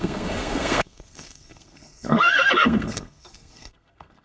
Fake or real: fake